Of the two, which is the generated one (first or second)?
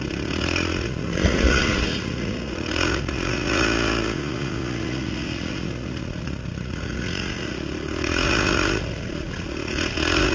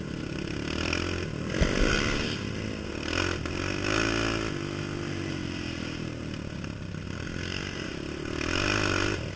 first